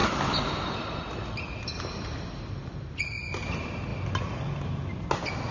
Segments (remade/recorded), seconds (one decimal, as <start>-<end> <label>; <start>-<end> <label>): 0.0-5.5 recorded